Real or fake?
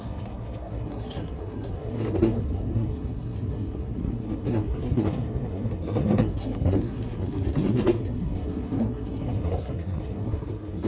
fake